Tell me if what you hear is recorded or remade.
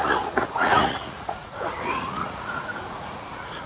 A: remade